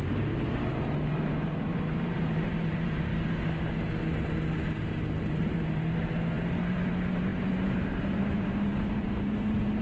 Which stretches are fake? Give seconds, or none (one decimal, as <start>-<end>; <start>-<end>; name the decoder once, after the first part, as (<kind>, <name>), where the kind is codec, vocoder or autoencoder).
0.0-3.1 (vocoder, BigVGAN v2); 5.2-6.0; 6.7-9.8